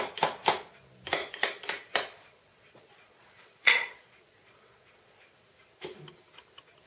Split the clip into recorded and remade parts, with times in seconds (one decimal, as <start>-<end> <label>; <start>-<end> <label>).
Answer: 0.0-1.2 recorded; 1.2-5.3 remade; 5.3-6.9 recorded

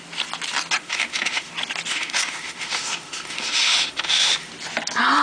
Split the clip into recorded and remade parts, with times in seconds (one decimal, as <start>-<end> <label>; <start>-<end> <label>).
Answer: 0.0-0.8 recorded; 0.8-1.5 remade; 1.5-1.9 recorded; 1.9-4.5 remade; 4.5-5.2 recorded

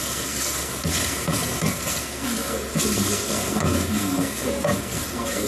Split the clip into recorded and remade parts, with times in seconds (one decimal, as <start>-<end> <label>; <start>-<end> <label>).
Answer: 0.0-5.5 remade

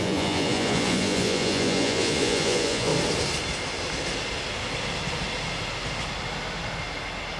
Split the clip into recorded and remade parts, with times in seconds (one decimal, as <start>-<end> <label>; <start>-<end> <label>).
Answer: 0.0-2.9 remade; 2.9-7.4 recorded

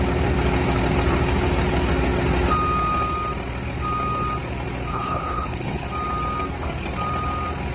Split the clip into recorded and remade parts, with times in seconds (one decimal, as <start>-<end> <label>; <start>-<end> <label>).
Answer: 0.0-4.9 recorded; 4.9-5.9 remade; 5.9-7.7 recorded